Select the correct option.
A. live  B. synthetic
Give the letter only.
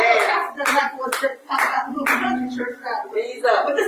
B